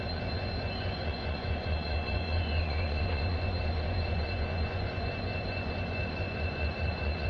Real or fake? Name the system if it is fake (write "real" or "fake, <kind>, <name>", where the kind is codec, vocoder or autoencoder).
fake, vocoder, Vocos